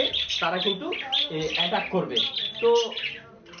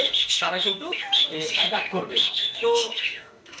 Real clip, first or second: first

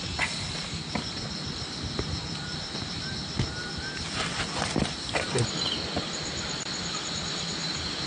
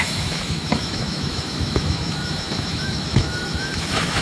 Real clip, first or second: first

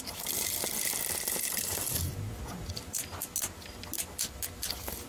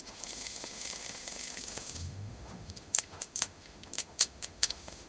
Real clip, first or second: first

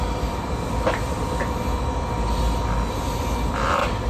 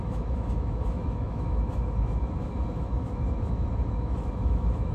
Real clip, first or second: first